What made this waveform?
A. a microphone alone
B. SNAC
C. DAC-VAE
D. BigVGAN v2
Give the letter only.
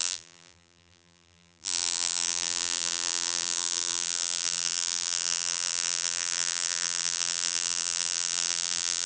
D